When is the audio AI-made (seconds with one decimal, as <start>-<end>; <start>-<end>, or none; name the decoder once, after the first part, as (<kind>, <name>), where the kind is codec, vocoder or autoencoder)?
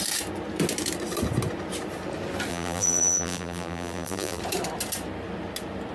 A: 2.5-4.4 (vocoder, BigVGAN v2)